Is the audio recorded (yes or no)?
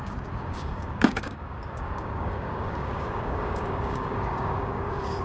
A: no